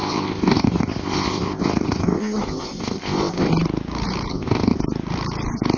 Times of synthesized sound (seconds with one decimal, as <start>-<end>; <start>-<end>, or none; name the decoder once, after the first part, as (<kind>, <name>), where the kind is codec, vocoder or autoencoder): 0.0-3.5 (codec, ZipCodec); 4.3-4.8